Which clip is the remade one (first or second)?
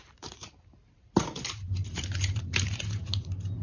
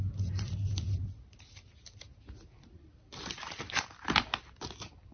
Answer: first